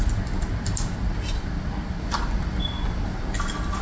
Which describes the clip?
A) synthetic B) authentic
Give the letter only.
B